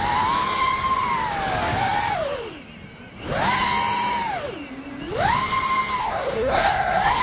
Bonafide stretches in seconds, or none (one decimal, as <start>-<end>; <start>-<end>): 0.0-6.0

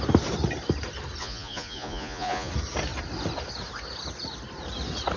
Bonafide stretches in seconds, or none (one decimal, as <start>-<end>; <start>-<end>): 0.0-1.2; 2.5-5.2

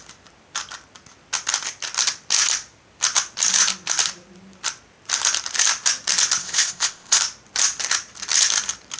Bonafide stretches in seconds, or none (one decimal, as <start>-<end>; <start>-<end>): 0.0-6.4; 7.2-9.0

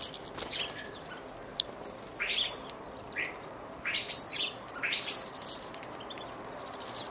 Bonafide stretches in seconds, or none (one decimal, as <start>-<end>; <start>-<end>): 0.0-1.5; 5.8-7.1

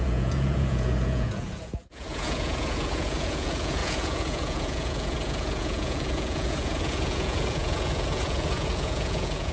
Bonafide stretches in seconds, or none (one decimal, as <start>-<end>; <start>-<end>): none

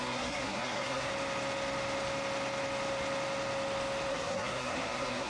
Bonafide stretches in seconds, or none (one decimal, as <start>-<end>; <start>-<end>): 1.1-4.1

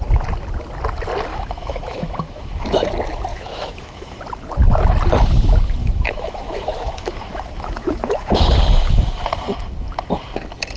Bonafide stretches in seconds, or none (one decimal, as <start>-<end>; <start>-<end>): 0.0-1.3; 2.9-3.3; 4.2-5.8; 8.4-10.8

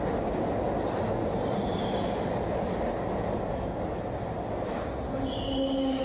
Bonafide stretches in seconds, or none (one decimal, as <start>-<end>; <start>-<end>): 0.0-6.0